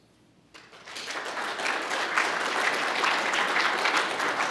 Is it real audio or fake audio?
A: real